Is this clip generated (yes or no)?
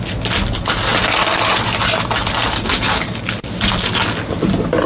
no